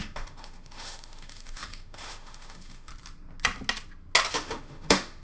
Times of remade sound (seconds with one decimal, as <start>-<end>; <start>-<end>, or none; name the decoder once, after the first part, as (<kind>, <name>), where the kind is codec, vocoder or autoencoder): 0.0-2.9 (autoencoder, DAC-VAE); 4.3-5.2